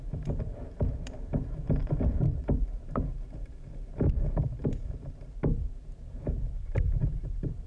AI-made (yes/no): yes